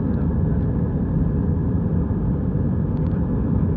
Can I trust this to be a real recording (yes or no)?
yes